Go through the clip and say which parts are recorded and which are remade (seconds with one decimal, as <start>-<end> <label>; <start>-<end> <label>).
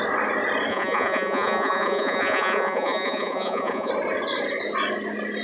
0.0-0.7 recorded; 0.7-3.9 remade; 3.9-5.4 recorded